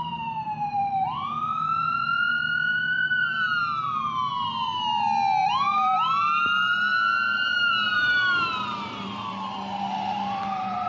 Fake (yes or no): yes